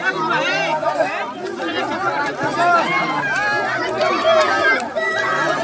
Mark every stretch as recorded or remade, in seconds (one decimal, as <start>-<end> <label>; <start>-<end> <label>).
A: 0.0-5.6 recorded

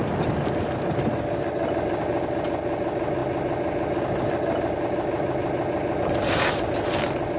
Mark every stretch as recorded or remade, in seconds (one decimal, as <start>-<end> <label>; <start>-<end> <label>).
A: 0.0-1.1 remade; 1.1-7.4 recorded

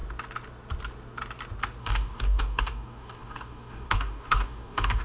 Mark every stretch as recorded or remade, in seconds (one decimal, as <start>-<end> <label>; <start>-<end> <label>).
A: 0.0-1.8 recorded; 1.8-5.0 remade

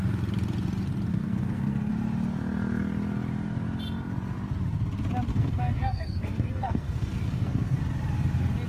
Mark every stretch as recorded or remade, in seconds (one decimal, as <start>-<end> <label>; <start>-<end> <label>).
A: 0.0-1.1 recorded; 1.1-1.9 remade; 1.9-5.3 recorded; 5.3-7.8 remade; 7.8-8.7 recorded

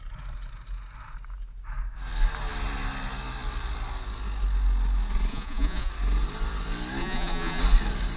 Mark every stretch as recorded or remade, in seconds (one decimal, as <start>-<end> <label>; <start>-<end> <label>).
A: 0.0-5.3 recorded; 5.3-5.9 remade; 5.9-7.0 recorded; 7.0-7.6 remade; 7.6-8.2 recorded

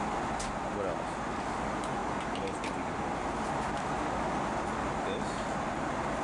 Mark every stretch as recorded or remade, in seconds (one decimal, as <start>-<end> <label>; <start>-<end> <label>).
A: 0.0-6.2 recorded

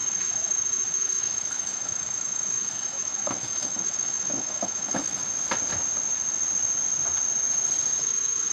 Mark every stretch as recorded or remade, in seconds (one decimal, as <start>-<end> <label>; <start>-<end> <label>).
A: 0.0-5.2 remade; 5.2-8.0 recorded; 8.0-8.5 remade

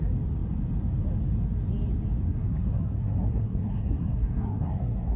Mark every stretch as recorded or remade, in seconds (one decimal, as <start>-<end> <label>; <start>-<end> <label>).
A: 0.0-2.3 recorded; 2.3-5.2 remade